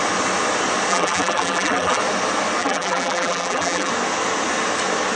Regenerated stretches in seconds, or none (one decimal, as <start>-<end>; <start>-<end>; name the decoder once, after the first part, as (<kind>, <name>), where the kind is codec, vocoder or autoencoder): 0.9-2.0 (vocoder, BigVGAN v2); 2.6-3.9